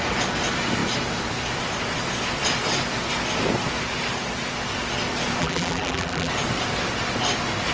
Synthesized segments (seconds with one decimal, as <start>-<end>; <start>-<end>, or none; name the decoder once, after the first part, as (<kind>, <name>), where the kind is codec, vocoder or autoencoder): 5.4-6.3 (vocoder, BigVGAN v2)